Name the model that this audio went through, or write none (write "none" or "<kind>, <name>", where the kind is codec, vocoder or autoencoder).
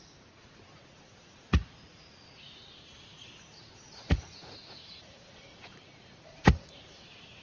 vocoder, Vocos